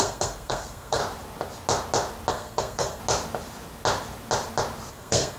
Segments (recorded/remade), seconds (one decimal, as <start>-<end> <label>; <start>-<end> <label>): 0.0-1.0 remade; 1.0-2.3 recorded; 2.3-3.0 remade; 3.0-4.9 recorded; 4.9-5.4 remade